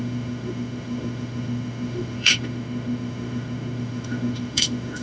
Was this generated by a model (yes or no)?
yes